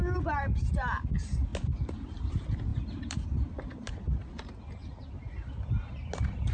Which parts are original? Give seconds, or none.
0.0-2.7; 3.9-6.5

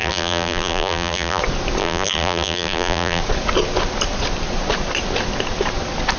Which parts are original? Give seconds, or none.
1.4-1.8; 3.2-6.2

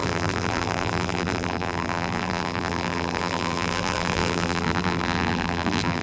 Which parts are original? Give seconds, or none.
none